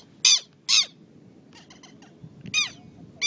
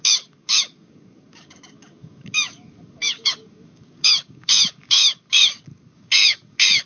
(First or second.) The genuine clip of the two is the first